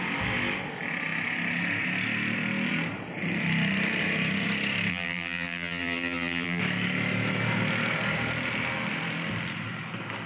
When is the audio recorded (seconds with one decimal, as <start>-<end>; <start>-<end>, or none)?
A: 0.0-4.9; 6.6-10.3